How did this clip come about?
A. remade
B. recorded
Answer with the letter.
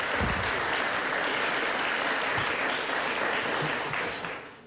B